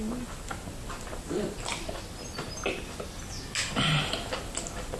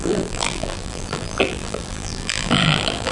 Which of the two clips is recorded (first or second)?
first